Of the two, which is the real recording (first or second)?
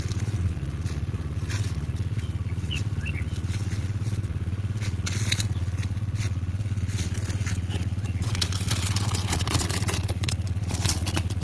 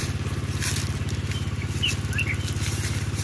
second